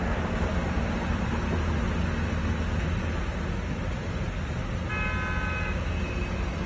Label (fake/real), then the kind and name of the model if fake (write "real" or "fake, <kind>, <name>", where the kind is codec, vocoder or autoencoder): real